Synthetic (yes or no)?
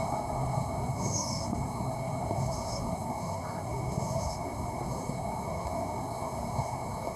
yes